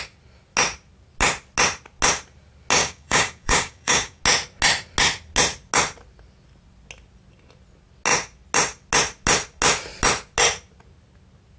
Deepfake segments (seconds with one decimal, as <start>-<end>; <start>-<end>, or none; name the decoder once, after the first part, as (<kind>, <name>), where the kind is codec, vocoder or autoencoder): 2.8-4.2 (codec, DAC)